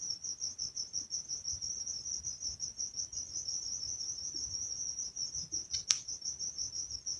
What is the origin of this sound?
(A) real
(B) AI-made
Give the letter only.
B